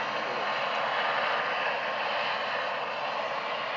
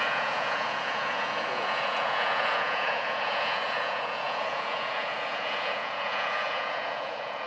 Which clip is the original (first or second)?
first